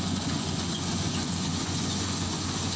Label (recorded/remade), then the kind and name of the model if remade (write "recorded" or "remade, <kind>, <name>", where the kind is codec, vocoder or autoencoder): remade, vocoder, Vocos